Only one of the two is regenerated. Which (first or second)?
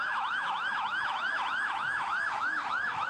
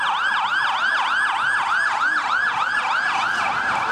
first